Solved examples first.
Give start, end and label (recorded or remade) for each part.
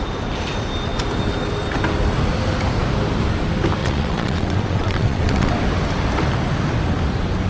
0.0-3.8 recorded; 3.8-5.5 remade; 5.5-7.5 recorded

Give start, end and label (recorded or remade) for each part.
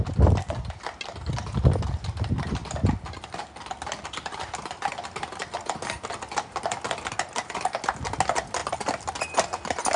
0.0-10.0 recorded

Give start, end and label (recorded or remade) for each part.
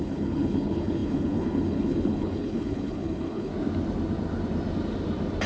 0.0-3.5 remade; 3.5-5.5 recorded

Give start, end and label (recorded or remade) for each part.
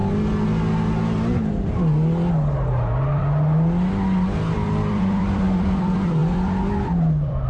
0.0-4.5 recorded; 4.5-7.5 remade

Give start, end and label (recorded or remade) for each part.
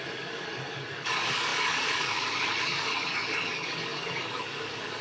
0.0-5.0 remade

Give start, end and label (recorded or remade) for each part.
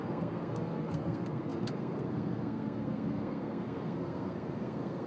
0.0-5.1 remade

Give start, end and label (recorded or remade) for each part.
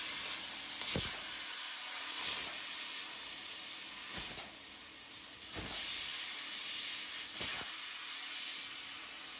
0.0-9.4 recorded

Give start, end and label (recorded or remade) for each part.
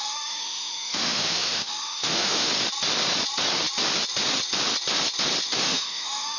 0.0-2.5 remade; 2.5-5.6 recorded; 5.6-6.4 remade